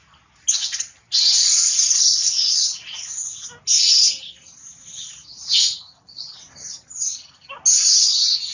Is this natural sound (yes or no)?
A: yes